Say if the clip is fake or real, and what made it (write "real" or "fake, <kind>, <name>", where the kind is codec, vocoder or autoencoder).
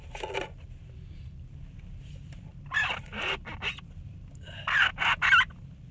real